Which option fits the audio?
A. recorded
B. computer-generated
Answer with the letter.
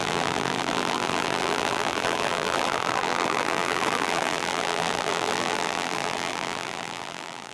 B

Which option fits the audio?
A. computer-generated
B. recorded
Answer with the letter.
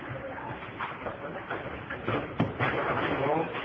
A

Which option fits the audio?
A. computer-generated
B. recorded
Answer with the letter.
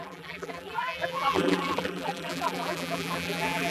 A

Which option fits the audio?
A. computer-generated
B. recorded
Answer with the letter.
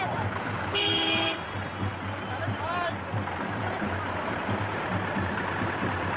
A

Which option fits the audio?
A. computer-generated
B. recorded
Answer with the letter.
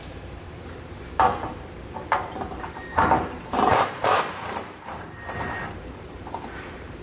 A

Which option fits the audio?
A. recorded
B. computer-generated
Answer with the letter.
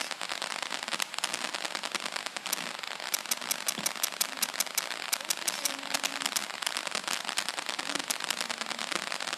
A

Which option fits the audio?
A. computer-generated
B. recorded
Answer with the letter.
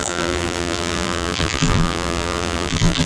A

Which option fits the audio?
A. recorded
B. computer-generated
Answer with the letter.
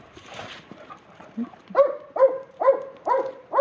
B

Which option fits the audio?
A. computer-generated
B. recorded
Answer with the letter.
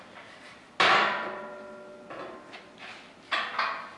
B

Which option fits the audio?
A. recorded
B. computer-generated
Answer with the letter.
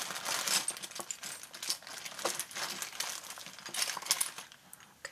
A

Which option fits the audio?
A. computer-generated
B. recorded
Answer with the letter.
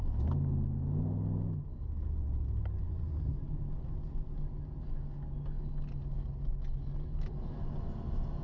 B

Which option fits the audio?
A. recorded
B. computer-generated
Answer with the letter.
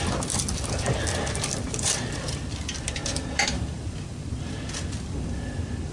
B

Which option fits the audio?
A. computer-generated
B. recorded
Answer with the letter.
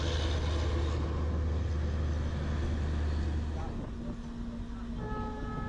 B